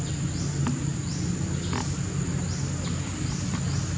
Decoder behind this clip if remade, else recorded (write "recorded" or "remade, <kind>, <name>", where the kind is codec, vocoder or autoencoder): recorded